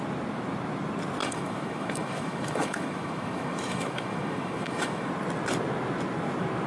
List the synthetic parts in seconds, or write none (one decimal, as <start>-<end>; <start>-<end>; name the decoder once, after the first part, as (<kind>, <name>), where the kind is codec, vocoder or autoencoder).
1.2-5.1 (autoencoder, DAC-VAE)